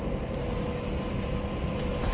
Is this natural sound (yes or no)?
yes